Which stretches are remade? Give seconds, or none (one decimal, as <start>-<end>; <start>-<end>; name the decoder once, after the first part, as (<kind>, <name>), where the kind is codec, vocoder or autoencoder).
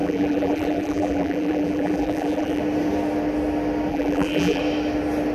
0.0-2.6 (vocoder, BigVGAN v2); 3.9-4.6